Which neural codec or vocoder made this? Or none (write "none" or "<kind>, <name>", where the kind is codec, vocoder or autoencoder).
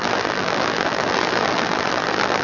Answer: vocoder, BigVGAN v2